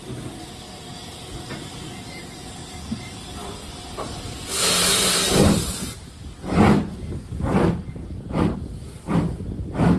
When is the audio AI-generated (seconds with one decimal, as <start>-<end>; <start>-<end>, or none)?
none